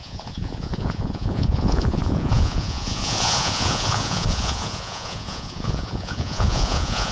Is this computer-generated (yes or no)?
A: yes